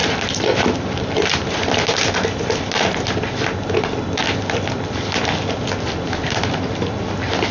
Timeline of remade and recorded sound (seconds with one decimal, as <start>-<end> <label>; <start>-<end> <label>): 0.0-7.5 recorded